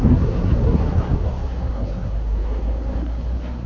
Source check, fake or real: fake